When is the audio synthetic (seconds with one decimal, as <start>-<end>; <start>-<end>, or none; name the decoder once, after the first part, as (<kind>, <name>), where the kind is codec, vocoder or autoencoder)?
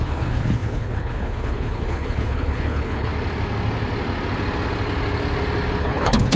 0.0-3.1 (codec, HILCodec); 5.8-6.4